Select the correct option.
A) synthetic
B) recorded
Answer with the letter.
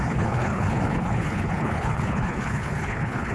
A